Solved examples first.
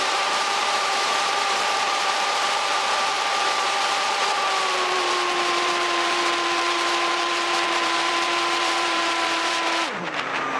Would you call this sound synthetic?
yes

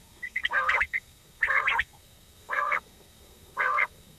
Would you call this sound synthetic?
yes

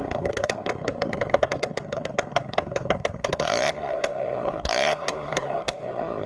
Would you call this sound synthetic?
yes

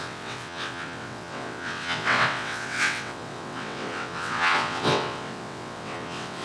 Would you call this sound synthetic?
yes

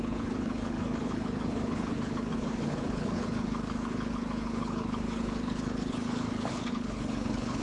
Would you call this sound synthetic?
yes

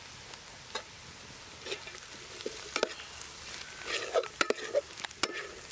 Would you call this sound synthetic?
no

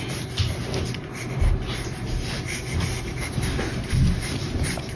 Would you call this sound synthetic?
no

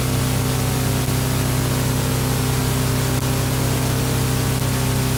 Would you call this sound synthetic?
no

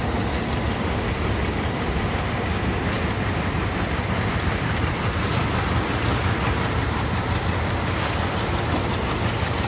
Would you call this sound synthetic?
yes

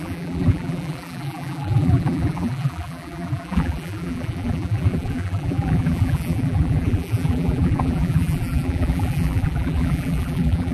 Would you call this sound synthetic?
yes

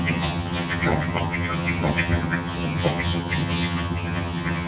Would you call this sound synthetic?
yes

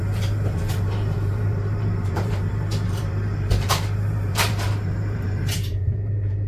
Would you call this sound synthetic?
yes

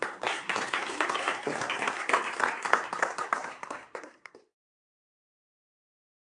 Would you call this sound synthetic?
yes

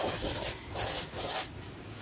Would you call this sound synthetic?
no